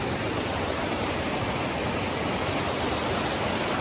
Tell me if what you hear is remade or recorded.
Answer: remade